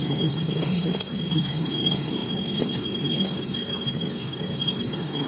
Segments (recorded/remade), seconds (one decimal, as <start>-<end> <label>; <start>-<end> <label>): 0.0-5.3 remade